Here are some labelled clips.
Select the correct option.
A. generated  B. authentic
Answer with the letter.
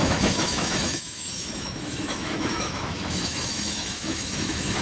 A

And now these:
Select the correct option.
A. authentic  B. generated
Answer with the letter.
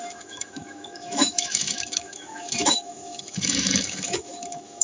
B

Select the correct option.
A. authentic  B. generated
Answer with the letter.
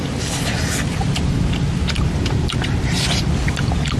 A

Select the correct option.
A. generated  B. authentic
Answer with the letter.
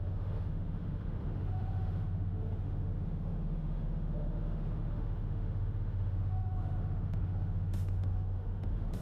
A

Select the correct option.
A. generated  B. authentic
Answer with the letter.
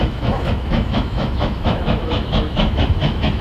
A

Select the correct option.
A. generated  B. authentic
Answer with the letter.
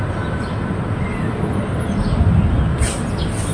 B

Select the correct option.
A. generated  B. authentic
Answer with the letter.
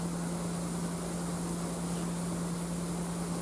B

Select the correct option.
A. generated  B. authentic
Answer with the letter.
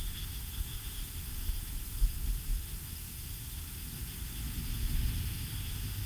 A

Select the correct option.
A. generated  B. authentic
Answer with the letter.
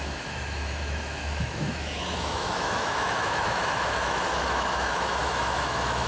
A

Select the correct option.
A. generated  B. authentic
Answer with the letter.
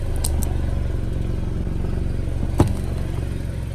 B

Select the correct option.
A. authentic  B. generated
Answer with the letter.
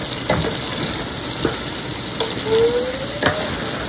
A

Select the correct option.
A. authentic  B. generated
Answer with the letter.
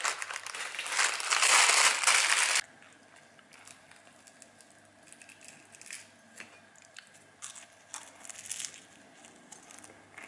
A